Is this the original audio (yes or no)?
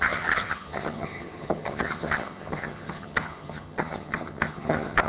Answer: no